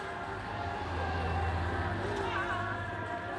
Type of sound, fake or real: real